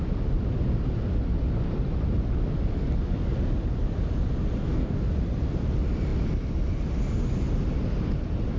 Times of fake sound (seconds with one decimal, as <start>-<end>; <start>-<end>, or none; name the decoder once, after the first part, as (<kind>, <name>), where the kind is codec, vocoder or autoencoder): 4.6-5.1 (codec, DAC)